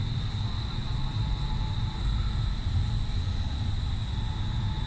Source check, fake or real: real